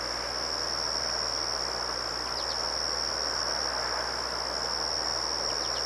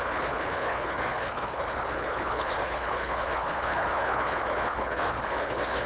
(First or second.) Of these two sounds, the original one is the first